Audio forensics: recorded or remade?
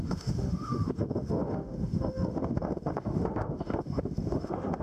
remade